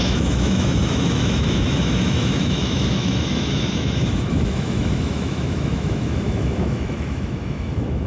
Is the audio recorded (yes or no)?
no